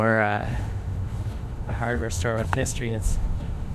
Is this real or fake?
fake